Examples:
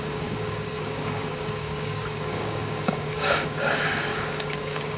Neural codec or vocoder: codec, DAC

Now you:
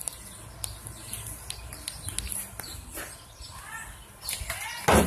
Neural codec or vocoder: none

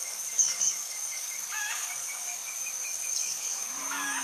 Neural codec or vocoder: codec, DAC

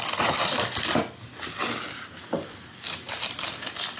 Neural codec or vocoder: none